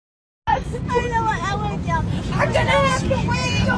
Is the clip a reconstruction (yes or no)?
no